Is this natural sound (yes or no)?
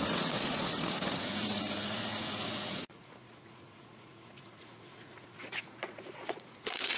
no